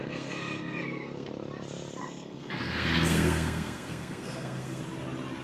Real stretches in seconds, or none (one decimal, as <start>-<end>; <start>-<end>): 1.3-2.0; 4.8-5.4